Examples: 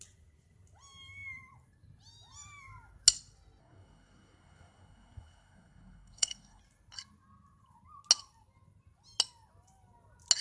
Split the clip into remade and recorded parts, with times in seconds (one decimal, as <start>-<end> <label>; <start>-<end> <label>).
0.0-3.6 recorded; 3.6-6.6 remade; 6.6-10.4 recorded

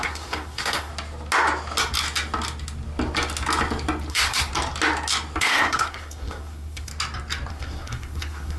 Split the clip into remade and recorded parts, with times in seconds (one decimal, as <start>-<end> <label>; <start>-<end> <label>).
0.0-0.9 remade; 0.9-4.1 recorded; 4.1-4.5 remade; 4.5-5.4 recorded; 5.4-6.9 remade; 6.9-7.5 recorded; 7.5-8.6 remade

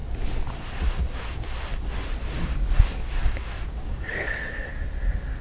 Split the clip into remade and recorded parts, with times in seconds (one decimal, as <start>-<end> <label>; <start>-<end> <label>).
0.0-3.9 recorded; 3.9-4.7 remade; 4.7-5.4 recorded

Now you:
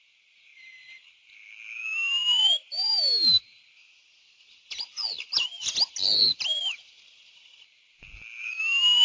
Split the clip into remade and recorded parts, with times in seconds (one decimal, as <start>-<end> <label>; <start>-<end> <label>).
0.0-9.0 recorded